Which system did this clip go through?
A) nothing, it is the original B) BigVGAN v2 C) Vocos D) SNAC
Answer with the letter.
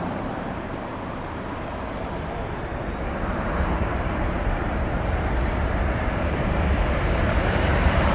B